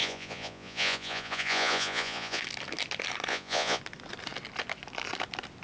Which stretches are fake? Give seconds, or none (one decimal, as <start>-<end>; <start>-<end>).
0.0-2.4; 3.3-3.8